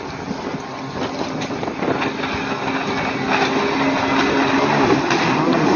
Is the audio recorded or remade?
recorded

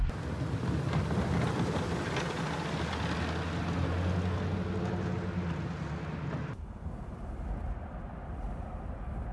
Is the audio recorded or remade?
recorded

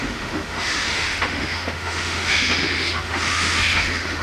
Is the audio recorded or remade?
remade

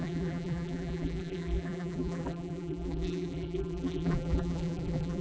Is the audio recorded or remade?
remade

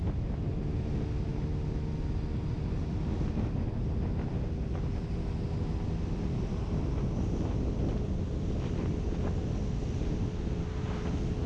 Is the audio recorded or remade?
recorded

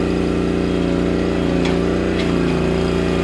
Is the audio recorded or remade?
recorded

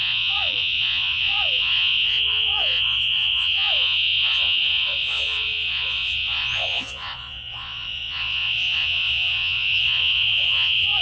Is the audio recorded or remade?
remade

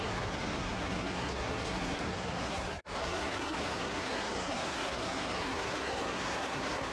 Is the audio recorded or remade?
remade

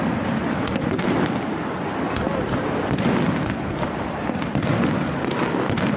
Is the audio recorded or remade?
remade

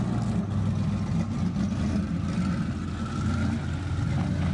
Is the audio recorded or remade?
recorded